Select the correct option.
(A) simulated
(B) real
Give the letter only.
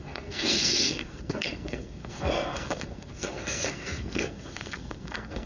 A